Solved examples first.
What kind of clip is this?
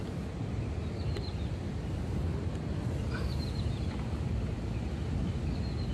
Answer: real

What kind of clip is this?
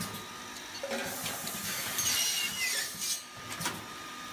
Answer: real